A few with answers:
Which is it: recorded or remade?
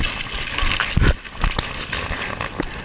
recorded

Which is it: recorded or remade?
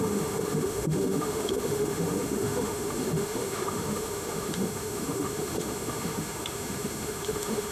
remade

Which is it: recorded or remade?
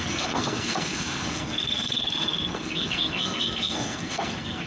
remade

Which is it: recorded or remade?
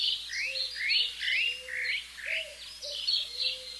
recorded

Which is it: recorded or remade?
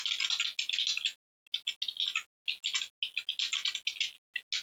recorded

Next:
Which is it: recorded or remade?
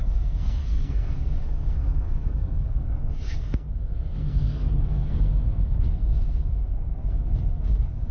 remade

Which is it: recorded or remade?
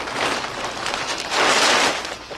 recorded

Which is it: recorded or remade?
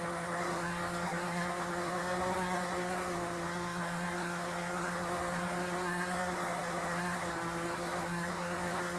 remade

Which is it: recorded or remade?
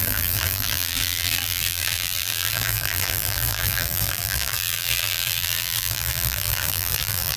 remade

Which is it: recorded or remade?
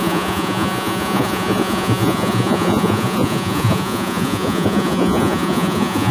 remade